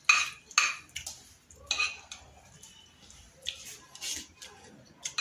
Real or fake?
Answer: real